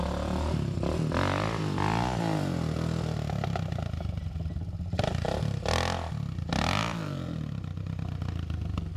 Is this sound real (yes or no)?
yes